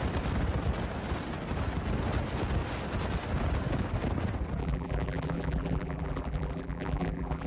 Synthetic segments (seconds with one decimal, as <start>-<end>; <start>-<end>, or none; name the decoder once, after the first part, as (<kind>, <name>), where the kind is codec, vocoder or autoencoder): 4.6-7.5 (vocoder, BigVGAN v2)